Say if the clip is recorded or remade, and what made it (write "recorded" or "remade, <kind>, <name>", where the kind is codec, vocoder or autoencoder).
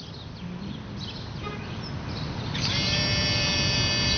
recorded